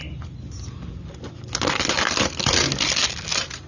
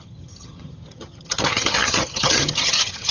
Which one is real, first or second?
first